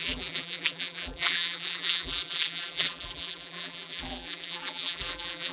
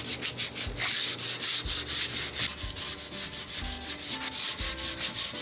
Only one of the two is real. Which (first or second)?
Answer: second